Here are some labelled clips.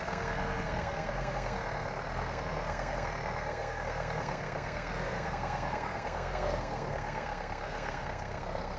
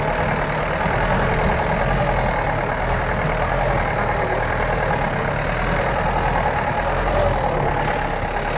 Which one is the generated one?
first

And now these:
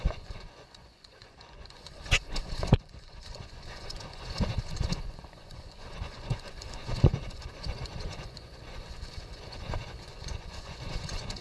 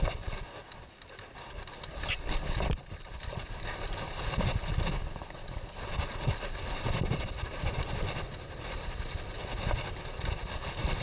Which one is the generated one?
first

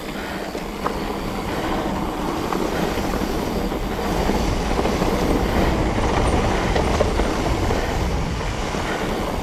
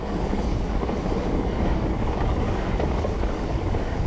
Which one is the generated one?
second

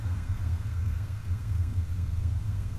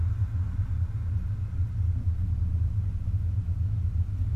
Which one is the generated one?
first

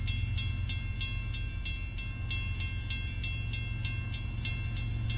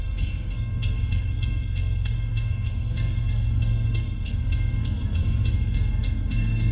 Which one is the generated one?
second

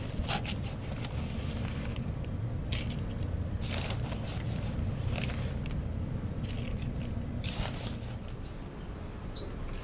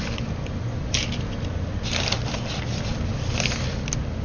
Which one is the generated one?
first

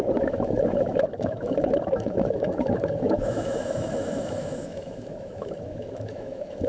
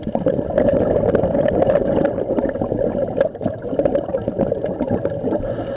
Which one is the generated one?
first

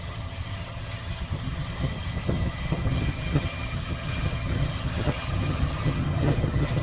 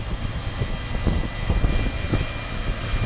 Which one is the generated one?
first